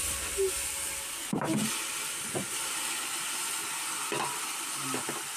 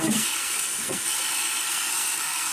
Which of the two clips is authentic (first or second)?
first